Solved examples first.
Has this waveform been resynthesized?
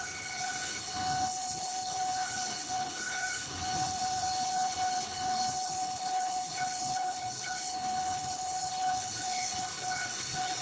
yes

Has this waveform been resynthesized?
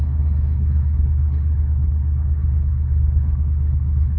yes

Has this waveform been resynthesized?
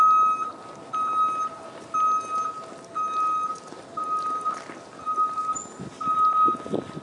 no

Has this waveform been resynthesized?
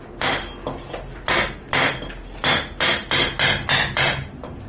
no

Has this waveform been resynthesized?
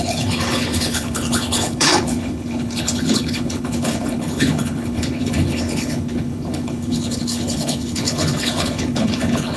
yes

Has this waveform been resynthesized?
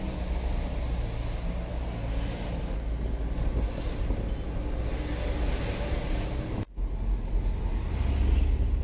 no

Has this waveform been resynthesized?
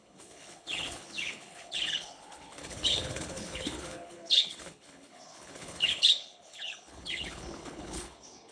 yes